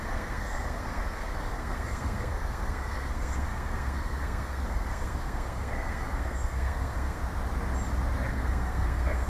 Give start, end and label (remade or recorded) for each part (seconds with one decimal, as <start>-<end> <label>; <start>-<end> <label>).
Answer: 0.0-7.2 remade; 7.2-8.3 recorded; 8.3-9.3 remade